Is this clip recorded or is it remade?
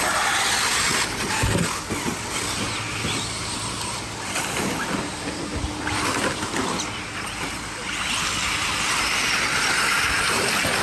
recorded